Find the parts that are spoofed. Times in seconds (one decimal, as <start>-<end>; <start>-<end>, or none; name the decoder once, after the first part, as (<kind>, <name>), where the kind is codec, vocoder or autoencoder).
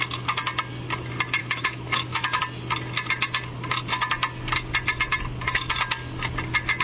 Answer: 1.4-2.4 (autoencoder, DAC-VAE)